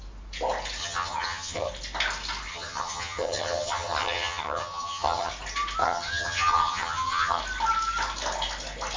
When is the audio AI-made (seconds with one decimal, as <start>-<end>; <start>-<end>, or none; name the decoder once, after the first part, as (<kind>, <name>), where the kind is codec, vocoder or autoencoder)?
0.8-1.7 (vocoder, HiFi-GAN); 2.5-5.3; 5.8-7.4